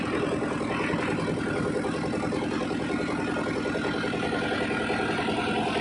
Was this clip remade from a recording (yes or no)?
no